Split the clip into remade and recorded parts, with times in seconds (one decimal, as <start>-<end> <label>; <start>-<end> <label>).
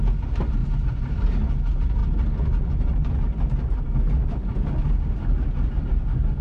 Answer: 0.0-0.6 recorded; 0.6-1.3 remade; 1.3-6.4 recorded